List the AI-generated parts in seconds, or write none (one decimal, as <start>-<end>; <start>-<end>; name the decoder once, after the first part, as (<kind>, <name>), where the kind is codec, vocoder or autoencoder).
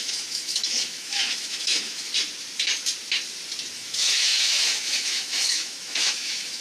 0.0-2.1 (autoencoder, DAC-VAE); 3.7-6.6